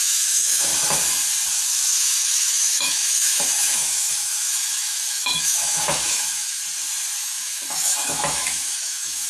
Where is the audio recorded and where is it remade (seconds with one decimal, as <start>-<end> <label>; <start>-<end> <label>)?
0.0-0.7 remade; 0.7-1.5 recorded; 1.5-6.6 remade; 6.6-7.2 recorded; 7.2-9.3 remade